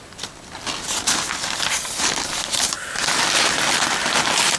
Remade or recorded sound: recorded